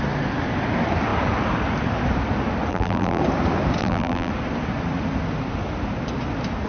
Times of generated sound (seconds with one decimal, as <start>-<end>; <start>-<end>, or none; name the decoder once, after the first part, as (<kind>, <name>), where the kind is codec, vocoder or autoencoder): 2.7-3.2 (vocoder, BigVGAN v2); 3.8-4.3